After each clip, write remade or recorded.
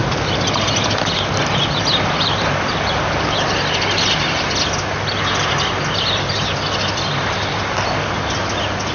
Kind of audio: recorded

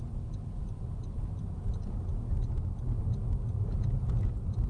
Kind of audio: recorded